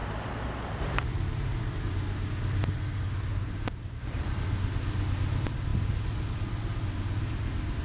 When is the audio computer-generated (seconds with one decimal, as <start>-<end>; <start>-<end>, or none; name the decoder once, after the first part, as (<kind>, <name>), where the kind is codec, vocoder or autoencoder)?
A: 0.0-1.8 (vocoder, BigVGAN v2); 3.3-3.9